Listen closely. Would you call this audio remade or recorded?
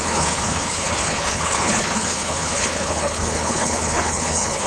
remade